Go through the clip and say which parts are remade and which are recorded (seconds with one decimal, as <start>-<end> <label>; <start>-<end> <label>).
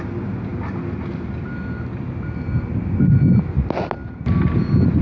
0.0-5.0 recorded